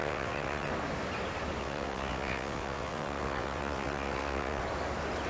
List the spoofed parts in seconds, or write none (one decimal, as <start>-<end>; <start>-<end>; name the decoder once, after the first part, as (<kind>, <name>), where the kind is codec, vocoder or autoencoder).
0.0-0.7 (vocoder, WaveNeXt); 1.6-4.6